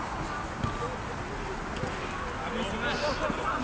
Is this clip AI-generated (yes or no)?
no